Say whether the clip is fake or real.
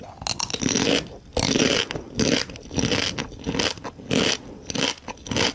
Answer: real